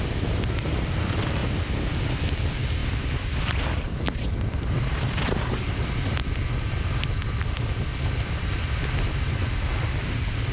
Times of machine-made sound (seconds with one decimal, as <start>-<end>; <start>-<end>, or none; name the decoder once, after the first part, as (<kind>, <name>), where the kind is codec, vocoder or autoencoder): 0.0-1.4 (vocoder, BigVGAN v2); 2.2-2.8; 3.4-10.5